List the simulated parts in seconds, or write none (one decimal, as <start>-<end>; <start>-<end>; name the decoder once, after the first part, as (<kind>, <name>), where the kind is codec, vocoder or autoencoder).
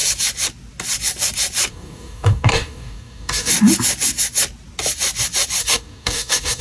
1.7-3.5 (codec, DAC); 5.6-6.6